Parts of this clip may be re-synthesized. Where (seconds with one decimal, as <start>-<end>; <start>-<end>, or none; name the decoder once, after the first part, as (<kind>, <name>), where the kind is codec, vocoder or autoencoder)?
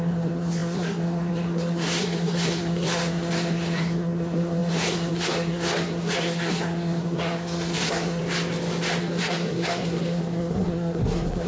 0.0-8.2 (codec, SNAC); 9.0-11.5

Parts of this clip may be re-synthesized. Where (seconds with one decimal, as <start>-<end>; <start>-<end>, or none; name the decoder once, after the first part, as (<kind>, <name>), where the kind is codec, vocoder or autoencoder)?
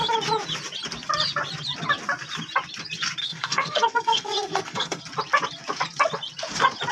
3.2-5.0 (codec, SNAC)